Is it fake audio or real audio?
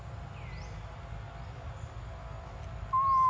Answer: real